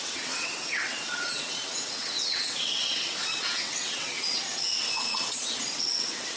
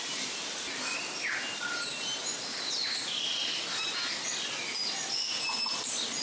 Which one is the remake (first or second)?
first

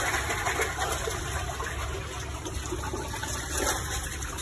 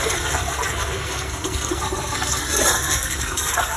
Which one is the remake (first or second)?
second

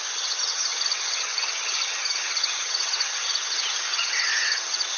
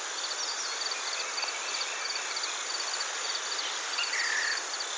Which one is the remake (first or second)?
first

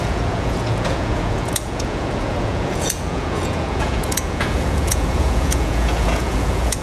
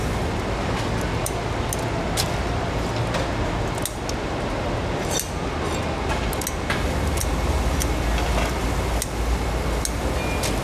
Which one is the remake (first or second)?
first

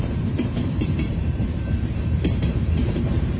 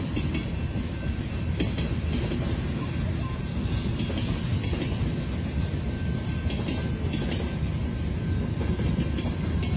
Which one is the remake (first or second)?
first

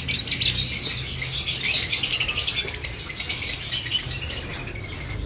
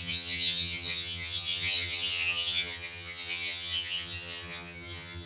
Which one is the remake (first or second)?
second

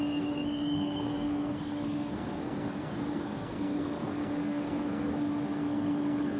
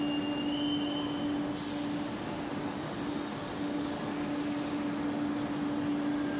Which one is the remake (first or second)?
first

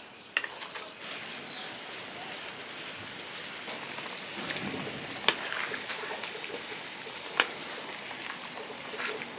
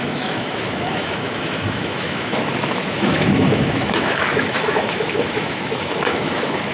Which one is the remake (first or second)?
second